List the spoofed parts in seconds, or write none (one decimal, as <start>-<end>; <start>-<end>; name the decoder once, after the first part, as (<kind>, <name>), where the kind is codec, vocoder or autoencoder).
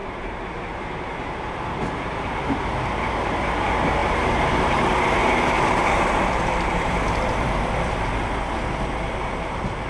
0.0-0.5 (vocoder, BigVGAN v2); 4.0-4.8; 5.2-8.1